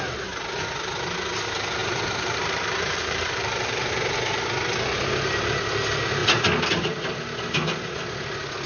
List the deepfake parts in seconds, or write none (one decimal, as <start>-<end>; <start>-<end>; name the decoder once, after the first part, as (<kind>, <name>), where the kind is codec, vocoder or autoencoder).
1.8-3.9 (vocoder, BigVGAN v2)